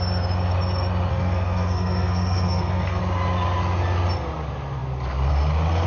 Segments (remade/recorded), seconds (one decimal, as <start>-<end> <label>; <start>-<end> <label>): 0.0-1.1 recorded; 1.1-3.0 remade; 3.0-5.9 recorded